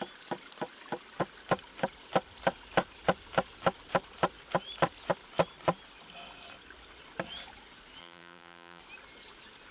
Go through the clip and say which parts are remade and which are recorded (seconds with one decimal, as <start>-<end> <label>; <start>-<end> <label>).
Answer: 0.0-8.0 recorded; 8.0-8.8 remade; 8.8-9.7 recorded